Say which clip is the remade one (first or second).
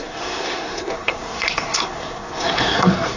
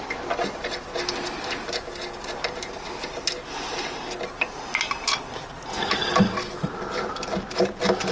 first